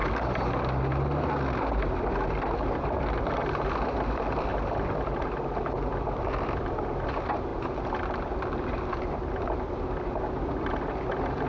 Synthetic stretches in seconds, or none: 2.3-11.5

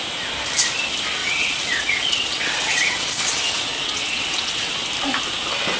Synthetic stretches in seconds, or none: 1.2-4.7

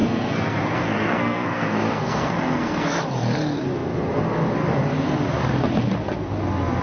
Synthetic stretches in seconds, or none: 0.0-3.0

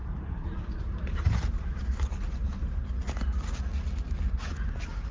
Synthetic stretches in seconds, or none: 0.0-3.1